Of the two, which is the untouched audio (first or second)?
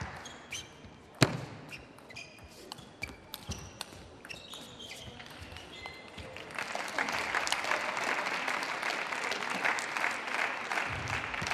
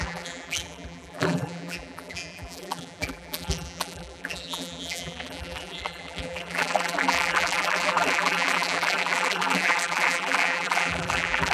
first